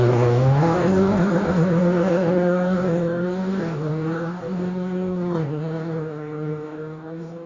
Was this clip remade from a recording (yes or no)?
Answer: yes